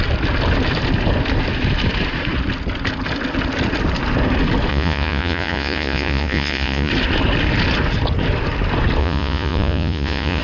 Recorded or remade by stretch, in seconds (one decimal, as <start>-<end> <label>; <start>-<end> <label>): 0.0-4.7 recorded; 4.7-6.9 remade; 6.9-9.0 recorded; 9.0-10.4 remade